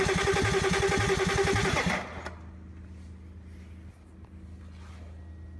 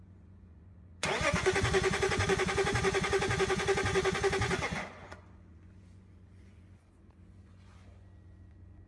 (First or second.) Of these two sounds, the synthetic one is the second